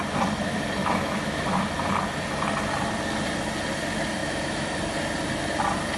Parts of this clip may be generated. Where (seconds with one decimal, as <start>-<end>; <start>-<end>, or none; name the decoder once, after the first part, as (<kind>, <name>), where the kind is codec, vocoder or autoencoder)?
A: 0.8-1.6 (autoencoder, DAC-VAE); 4.2-4.8